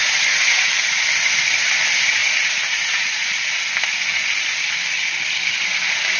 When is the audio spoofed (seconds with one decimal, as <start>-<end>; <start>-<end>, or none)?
0.0-0.9; 2.2-3.4